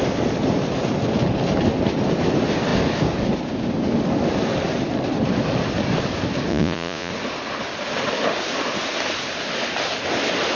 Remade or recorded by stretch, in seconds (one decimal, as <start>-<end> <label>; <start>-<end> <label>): 0.0-6.5 recorded; 6.5-7.1 remade; 7.1-10.6 recorded